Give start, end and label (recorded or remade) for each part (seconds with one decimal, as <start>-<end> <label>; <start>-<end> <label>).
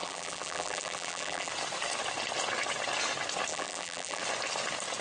0.0-1.5 remade; 1.5-3.5 recorded; 3.5-4.2 remade; 4.2-5.0 recorded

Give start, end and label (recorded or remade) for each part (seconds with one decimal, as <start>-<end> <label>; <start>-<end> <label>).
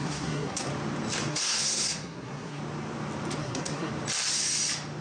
0.0-0.7 remade; 0.7-1.3 recorded; 1.3-2.6 remade; 2.6-3.4 recorded; 3.4-3.9 remade; 3.9-5.0 recorded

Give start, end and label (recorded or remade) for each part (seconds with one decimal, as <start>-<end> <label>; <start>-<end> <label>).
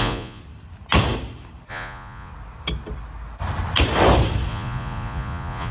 0.0-0.4 remade; 0.4-1.7 recorded; 1.7-2.3 remade; 2.3-4.5 recorded; 4.5-5.7 remade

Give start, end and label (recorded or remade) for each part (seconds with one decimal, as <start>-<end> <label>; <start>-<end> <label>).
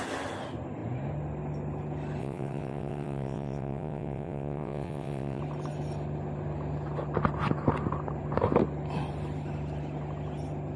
0.0-2.2 recorded; 2.2-5.4 remade; 5.4-10.8 recorded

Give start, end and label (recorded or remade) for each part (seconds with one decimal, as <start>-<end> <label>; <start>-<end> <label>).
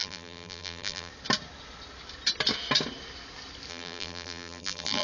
0.0-1.1 remade; 1.1-3.7 recorded; 3.7-5.0 remade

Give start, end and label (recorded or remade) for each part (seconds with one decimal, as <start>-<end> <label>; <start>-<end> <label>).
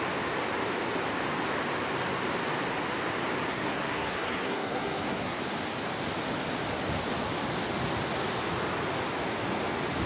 0.0-3.5 recorded; 3.5-5.4 remade; 5.4-10.1 recorded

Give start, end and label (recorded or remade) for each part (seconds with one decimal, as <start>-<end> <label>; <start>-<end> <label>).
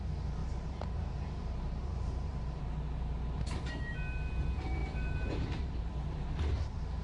0.0-0.4 recorded; 0.4-2.6 remade; 2.6-4.8 recorded; 4.8-5.9 remade; 5.9-7.0 recorded